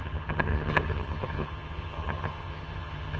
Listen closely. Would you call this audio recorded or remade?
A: remade